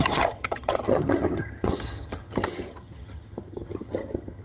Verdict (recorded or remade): remade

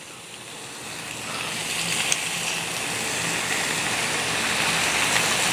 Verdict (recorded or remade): recorded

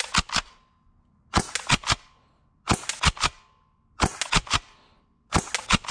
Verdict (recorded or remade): recorded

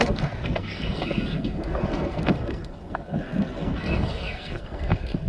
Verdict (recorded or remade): remade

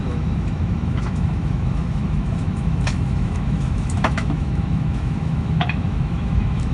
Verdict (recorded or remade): remade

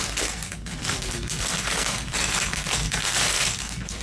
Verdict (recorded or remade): remade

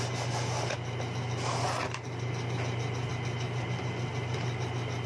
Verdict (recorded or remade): recorded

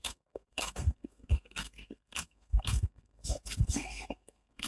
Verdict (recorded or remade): remade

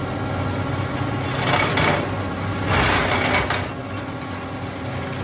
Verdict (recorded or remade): recorded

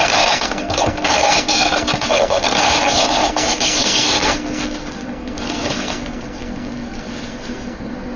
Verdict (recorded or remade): remade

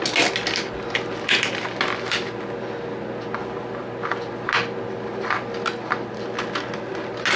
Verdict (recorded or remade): recorded